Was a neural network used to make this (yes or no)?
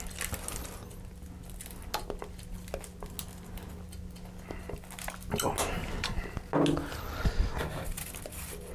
no